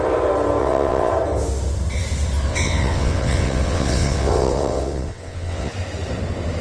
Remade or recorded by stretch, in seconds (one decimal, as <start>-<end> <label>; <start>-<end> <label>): 0.0-0.6 recorded; 0.6-1.1 remade; 1.1-2.5 recorded; 2.5-5.7 remade; 5.7-6.6 recorded